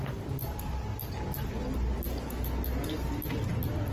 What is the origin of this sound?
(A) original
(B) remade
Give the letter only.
A